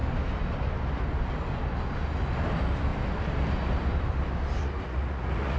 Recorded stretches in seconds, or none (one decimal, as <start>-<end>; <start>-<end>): 0.0-4.6